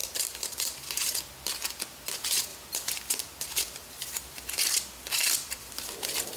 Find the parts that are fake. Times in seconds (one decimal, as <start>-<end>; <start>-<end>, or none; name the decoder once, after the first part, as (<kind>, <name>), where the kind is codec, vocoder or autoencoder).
0.0-1.2 (vocoder, BigVGAN v2); 2.5-6.4